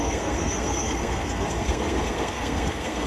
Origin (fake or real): fake